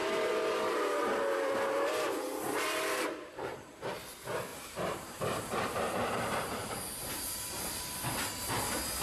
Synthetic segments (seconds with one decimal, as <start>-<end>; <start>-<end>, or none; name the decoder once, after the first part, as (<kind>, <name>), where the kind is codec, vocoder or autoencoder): 0.0-3.9 (vocoder, BigVGAN v2); 4.5-8.1